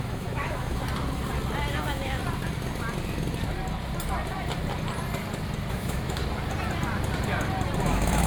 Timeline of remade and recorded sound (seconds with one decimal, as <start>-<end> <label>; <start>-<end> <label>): 0.0-0.8 remade; 0.8-1.7 recorded; 1.7-2.2 remade; 2.2-5.7 recorded; 5.7-6.2 remade; 6.2-7.8 recorded; 7.8-8.3 remade

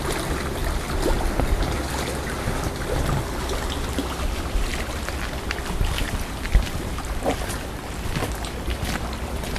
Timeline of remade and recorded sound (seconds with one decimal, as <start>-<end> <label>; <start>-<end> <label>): 0.0-9.6 recorded

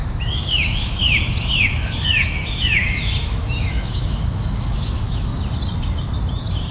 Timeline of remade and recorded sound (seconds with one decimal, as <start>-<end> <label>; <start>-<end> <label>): 0.0-1.0 remade; 1.0-1.6 recorded; 1.6-5.3 remade; 5.3-6.7 recorded

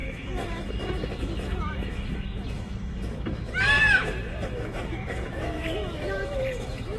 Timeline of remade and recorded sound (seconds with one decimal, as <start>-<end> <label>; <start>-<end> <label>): 0.0-7.0 remade